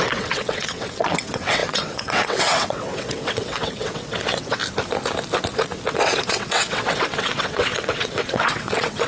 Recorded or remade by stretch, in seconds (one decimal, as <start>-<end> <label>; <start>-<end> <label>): 0.0-4.6 remade; 4.6-5.9 recorded; 5.9-9.1 remade